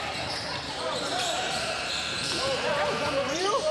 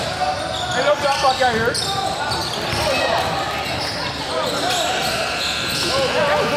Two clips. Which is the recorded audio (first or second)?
second